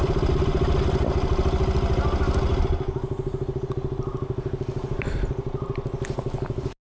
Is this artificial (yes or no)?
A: no